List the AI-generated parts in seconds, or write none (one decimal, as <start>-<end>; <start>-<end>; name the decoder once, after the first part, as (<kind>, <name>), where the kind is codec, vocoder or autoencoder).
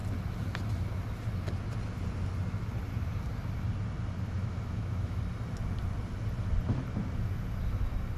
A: 4.4-5.2 (autoencoder, DAC-VAE)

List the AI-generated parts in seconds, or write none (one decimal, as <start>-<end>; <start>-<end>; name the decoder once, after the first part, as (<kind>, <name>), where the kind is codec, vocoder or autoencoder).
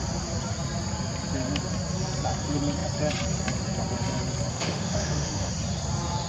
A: 4.5-5.5 (autoencoder, DAC-VAE)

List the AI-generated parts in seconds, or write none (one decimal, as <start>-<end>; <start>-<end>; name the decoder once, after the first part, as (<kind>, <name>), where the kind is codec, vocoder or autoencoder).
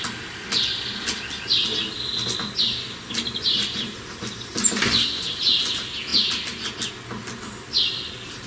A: none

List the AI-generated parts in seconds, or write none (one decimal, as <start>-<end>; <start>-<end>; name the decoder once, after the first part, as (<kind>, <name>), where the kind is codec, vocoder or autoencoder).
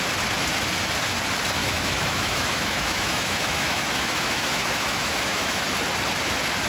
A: 1.6-5.6 (autoencoder, DAC-VAE)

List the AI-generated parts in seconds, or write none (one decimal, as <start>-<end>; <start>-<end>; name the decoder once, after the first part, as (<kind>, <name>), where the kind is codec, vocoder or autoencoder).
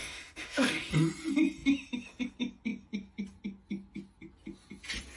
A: 0.0-0.9 (autoencoder, DAC-VAE)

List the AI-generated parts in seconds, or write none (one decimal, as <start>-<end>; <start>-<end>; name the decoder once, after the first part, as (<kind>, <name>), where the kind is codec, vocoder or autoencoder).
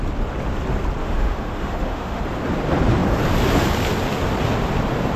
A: 1.0-2.2 (autoencoder, DAC-VAE)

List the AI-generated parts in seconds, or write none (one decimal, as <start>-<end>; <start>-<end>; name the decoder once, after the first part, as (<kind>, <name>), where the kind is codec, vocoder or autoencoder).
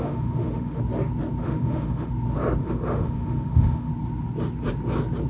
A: 0.0-0.8 (autoencoder, DAC-VAE); 1.4-2.1; 2.6-3.9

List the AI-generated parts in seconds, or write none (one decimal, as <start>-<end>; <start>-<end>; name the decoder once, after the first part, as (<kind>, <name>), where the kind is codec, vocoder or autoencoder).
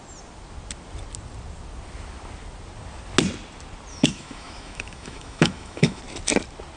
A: 3.9-6.0 (autoencoder, DAC-VAE)